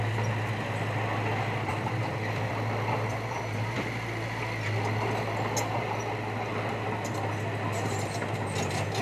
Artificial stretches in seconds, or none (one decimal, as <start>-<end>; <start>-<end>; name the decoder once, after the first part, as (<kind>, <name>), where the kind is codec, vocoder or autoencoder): 1.7-4.4 (vocoder, BigVGAN v2)